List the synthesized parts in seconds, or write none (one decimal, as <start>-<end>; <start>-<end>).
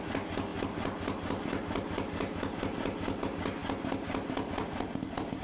none